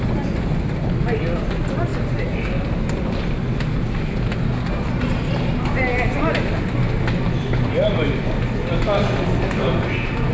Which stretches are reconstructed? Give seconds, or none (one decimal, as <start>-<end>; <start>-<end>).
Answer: none